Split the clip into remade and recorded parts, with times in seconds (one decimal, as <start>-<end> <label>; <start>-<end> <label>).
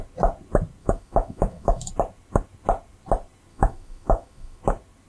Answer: 0.0-0.8 recorded; 0.8-1.9 remade; 1.9-3.5 recorded; 3.5-4.6 remade; 4.6-5.1 recorded